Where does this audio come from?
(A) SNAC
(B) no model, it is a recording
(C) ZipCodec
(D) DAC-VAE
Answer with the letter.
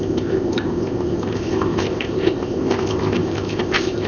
C